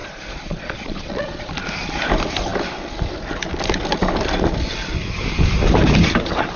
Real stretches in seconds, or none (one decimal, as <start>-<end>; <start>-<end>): 1.5-6.6